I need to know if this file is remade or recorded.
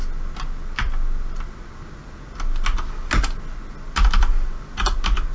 recorded